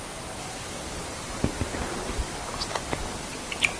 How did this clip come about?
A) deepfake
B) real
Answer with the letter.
B